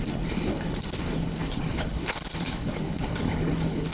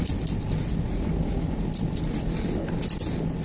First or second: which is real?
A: second